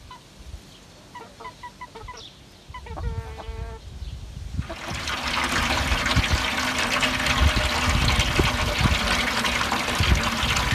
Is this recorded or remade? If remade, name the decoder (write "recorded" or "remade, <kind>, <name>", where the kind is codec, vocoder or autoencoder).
recorded